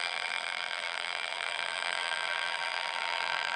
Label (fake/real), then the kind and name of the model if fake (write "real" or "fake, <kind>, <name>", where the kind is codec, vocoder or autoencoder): fake, vocoder, BigVGAN v2